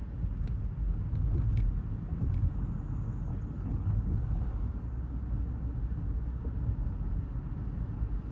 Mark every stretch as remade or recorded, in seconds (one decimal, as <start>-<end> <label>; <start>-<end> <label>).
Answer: 0.0-3.3 recorded; 3.3-4.2 remade; 4.2-8.3 recorded